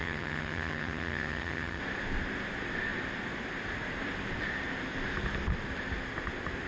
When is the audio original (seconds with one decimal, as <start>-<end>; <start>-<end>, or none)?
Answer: 1.8-6.7